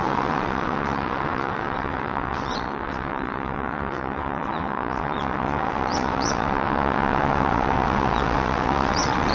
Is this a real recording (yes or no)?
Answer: no